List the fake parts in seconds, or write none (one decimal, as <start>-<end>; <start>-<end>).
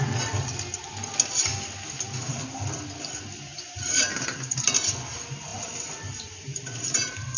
3.5-4.7; 5.5-7.4